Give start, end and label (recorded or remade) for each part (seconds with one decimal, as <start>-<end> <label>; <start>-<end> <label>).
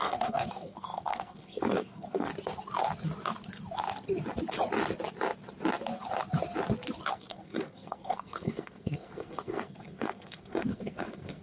0.0-2.3 remade; 2.3-7.1 recorded; 7.1-11.4 remade